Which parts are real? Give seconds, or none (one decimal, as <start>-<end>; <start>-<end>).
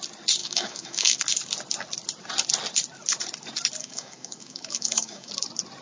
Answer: 0.0-0.4; 1.2-3.8; 5.3-5.8